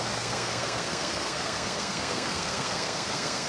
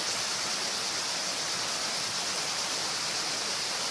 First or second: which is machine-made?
first